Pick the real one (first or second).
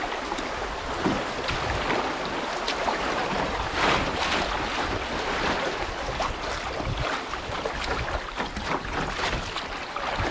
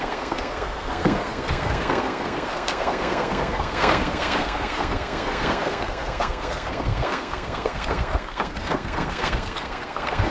first